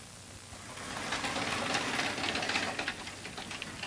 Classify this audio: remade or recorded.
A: recorded